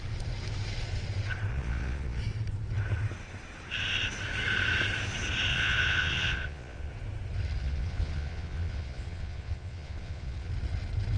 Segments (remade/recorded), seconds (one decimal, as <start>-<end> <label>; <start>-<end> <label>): 0.0-1.5 recorded; 1.5-2.2 remade; 2.2-5.5 recorded; 5.5-6.9 remade; 6.9-7.6 recorded; 7.6-10.5 remade; 10.5-11.2 recorded